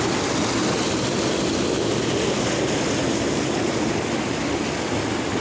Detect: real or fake real